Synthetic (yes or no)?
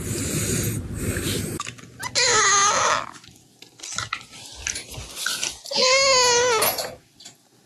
no